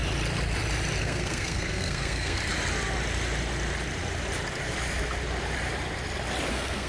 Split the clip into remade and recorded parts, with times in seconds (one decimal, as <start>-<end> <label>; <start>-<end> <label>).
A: 0.0-1.0 recorded; 1.0-2.4 remade; 2.4-6.5 recorded; 6.5-6.9 remade